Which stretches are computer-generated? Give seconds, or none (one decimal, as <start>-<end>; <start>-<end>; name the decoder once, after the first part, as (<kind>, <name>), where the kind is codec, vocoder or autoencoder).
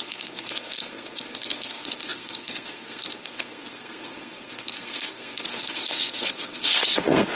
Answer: 0.0-7.4 (codec, SNAC)